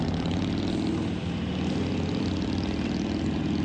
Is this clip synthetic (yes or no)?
no